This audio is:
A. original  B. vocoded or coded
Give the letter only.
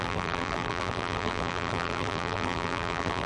B